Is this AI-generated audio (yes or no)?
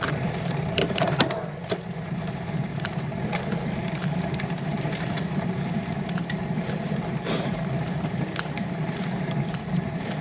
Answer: yes